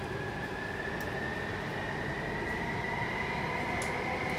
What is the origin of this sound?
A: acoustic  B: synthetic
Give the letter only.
A